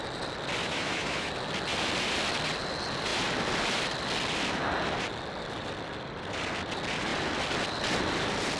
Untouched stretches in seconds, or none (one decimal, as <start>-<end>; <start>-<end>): 0.0-0.6; 1.3-8.6

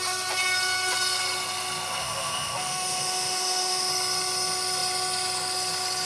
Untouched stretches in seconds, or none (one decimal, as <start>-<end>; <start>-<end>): 0.0-2.0; 3.9-6.1